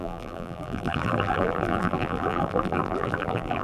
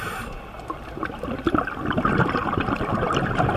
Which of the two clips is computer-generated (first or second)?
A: first